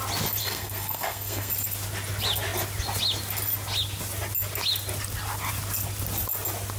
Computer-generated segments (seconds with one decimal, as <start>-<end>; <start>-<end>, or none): 0.4-1.5